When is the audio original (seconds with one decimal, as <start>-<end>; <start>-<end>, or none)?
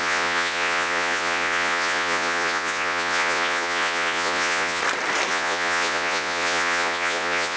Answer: 4.8-5.3